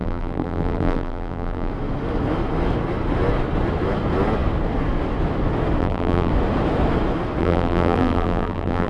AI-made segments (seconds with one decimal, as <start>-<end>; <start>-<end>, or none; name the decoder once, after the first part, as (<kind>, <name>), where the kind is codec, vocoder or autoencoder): 0.0-1.7 (vocoder, BigVGAN v2); 5.8-6.3; 7.4-8.9